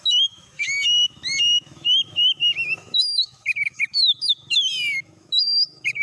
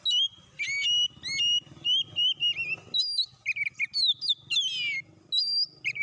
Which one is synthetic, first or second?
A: first